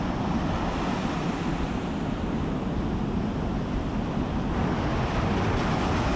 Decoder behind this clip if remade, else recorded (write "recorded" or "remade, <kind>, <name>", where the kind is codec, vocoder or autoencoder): recorded